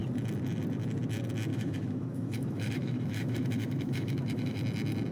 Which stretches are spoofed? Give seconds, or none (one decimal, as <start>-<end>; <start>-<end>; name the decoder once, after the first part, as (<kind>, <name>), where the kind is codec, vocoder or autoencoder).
1.5-4.6 (autoencoder, DAC-VAE)